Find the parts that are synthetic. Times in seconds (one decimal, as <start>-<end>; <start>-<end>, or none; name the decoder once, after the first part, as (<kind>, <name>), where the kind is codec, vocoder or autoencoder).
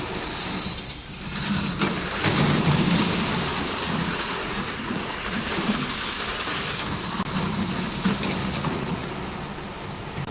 3.5-5.5 (vocoder, Vocos); 8.4-9.1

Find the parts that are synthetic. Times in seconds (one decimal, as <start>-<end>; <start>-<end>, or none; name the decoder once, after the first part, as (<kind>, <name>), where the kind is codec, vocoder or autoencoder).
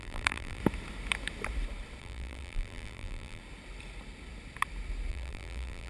0.0-0.6 (vocoder, BigVGAN v2); 2.0-3.4; 5.1-5.9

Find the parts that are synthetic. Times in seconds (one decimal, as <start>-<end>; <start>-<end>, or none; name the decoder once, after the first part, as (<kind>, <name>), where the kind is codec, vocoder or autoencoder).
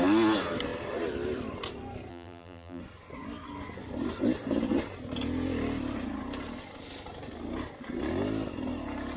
2.1-2.8 (vocoder, BigVGAN v2)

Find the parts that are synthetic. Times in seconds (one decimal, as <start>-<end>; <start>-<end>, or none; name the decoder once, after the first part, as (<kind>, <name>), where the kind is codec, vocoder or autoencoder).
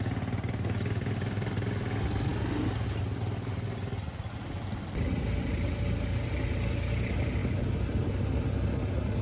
none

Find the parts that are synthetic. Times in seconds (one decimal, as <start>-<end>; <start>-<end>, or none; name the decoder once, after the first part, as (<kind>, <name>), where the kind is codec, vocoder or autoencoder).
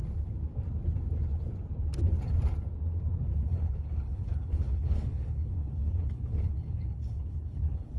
3.5-8.0 (codec, HILCodec)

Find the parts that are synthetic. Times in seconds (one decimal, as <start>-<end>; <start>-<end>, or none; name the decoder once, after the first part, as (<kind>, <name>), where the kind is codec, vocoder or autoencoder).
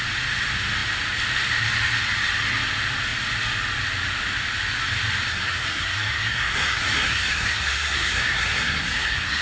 5.3-9.4 (codec, SNAC)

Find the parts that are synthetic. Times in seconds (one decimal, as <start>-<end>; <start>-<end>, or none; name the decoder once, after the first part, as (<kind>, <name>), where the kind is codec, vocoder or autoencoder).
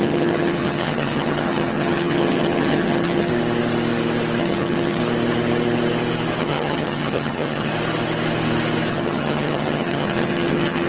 0.0-3.3 (vocoder, HiFi-GAN); 4.4-5.0; 6.4-7.7; 8.9-10.9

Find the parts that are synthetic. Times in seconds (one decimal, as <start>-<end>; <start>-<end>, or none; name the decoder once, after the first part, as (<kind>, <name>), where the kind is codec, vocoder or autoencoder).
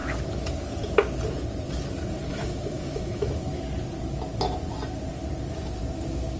2.3-3.6 (autoencoder, DAC-VAE)